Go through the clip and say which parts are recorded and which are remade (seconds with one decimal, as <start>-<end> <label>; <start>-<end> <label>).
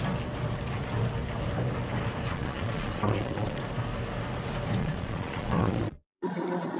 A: 0.0-2.3 recorded; 2.3-3.6 remade; 3.6-4.8 recorded; 4.8-6.8 remade